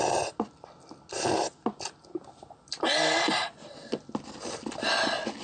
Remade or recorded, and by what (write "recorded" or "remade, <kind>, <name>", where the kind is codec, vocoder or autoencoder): recorded